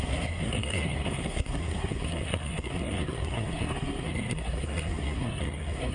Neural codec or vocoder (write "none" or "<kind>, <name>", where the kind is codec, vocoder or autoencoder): codec, SNAC